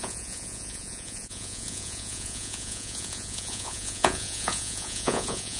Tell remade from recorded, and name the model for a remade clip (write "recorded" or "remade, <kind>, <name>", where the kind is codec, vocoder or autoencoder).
remade, vocoder, Vocos